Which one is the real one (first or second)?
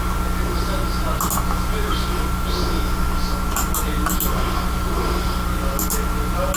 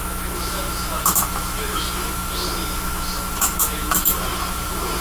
first